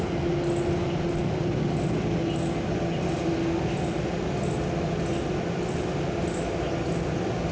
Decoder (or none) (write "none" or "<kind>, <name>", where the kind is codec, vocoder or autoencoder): none